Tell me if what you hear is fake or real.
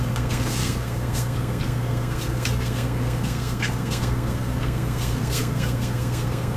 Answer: fake